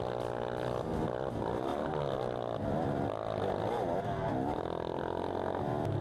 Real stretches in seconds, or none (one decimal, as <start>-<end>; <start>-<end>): 0.0-6.0